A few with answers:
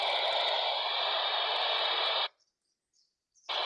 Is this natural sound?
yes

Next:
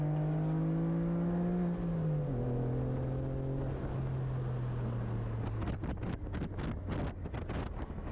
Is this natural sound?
yes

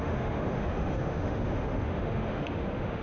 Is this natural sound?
no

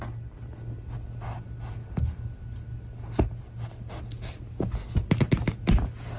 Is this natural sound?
yes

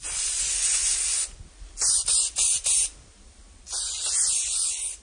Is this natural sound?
yes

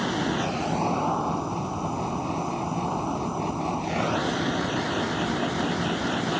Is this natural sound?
yes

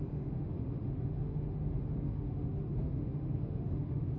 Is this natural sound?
no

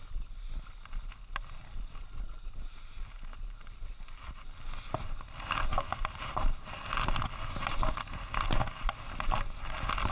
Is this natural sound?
yes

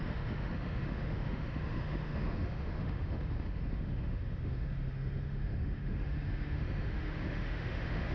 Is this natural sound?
no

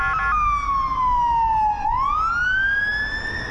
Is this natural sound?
yes